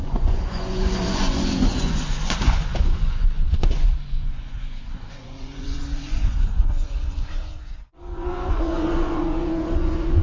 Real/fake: fake